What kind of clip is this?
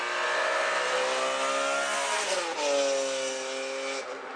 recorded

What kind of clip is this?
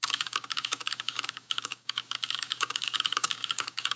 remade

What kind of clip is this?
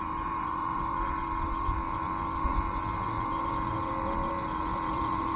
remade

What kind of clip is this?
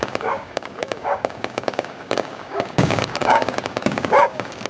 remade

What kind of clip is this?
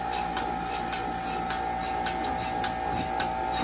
recorded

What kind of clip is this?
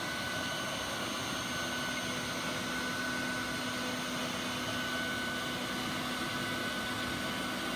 recorded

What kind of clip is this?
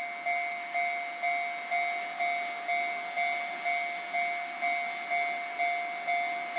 recorded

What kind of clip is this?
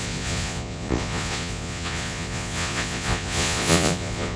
remade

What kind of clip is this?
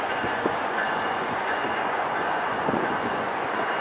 remade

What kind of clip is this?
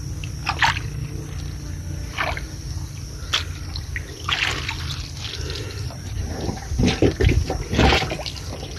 recorded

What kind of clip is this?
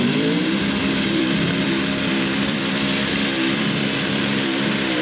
remade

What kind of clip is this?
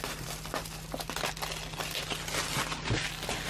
recorded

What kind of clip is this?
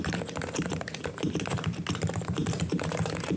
remade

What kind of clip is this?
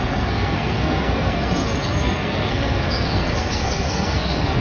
remade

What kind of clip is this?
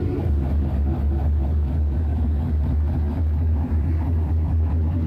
remade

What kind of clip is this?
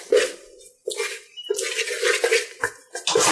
recorded